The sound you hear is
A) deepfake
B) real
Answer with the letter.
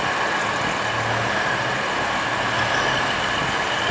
B